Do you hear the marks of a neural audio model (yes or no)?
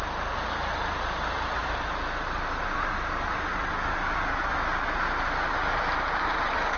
no